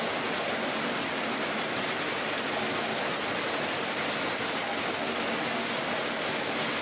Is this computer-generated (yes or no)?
no